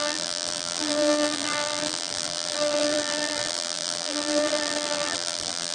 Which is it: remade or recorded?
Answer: remade